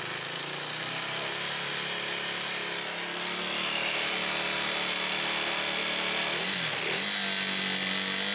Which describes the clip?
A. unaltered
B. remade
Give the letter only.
A